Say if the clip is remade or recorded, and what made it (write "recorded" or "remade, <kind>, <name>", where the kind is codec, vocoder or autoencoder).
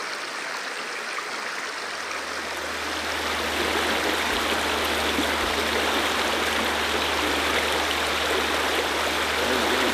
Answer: recorded